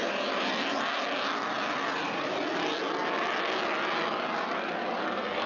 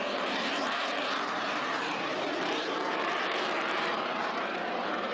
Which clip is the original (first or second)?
first